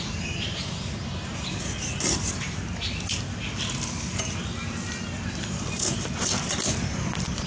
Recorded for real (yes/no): yes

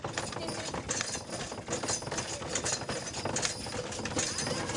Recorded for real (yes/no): yes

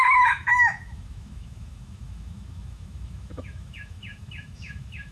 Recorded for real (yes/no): no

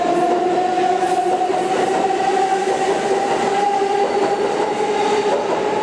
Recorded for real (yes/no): yes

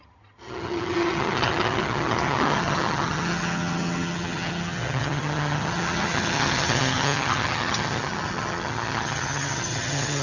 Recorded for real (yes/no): no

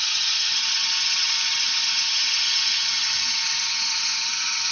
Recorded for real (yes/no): no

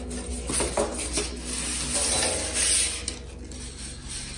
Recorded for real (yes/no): yes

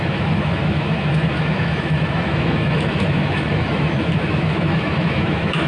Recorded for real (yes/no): no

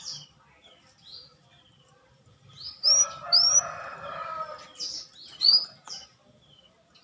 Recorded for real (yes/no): yes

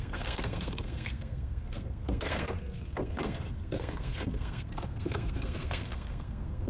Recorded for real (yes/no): no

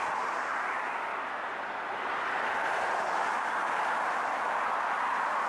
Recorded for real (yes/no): yes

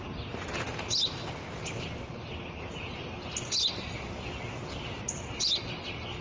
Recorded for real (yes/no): yes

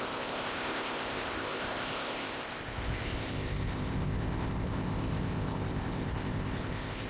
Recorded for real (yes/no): no